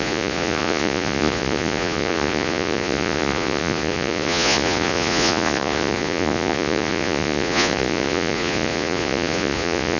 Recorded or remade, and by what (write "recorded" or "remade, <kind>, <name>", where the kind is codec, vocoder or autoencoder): remade, vocoder, Vocos